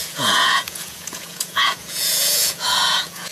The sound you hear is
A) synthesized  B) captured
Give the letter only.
A